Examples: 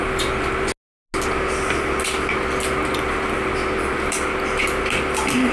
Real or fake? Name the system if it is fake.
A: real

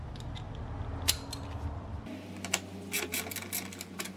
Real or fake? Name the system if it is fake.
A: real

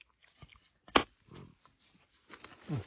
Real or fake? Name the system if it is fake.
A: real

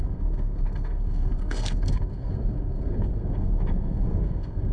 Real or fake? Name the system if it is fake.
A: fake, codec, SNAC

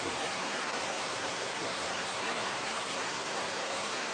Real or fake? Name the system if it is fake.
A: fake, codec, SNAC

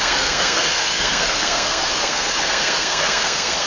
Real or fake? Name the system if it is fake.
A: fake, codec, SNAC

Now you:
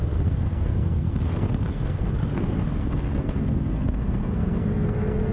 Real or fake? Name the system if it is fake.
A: fake, codec, SNAC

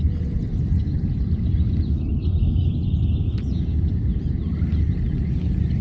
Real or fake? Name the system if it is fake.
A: real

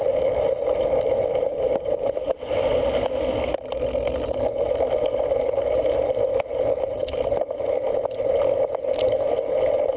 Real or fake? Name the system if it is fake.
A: real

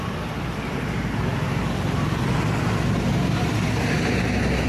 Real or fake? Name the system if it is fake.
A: real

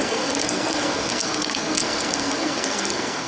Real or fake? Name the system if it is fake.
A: fake, codec, SNAC